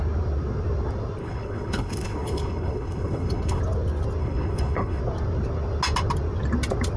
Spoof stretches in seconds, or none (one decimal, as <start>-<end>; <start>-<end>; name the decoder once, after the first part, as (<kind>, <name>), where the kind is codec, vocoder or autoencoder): 1.2-3.6 (codec, HILCodec); 4.2-5.0